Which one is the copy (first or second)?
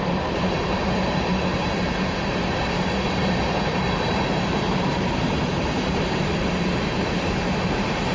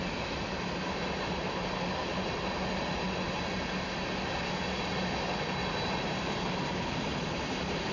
first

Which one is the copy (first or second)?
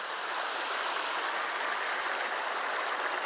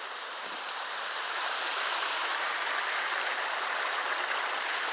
second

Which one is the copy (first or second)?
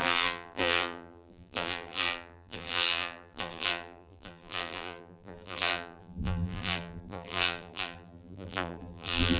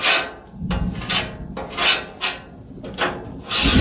first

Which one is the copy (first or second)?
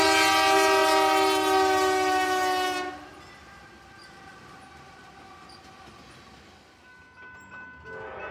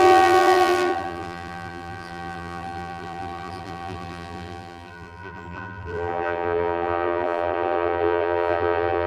second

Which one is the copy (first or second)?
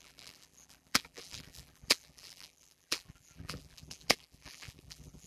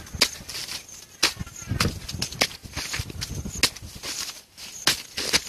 first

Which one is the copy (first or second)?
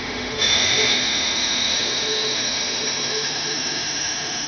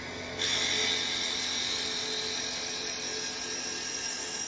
first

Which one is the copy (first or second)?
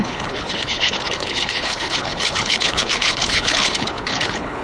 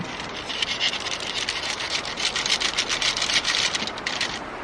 first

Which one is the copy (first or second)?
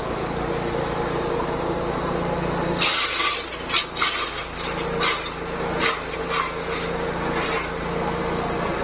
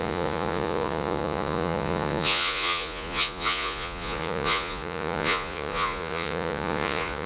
second